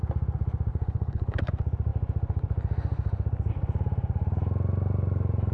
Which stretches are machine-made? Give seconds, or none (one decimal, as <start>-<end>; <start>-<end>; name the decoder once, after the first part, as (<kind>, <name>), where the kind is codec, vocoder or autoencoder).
0.7-1.5 (codec, HILCodec)